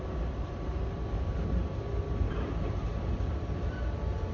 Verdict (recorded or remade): recorded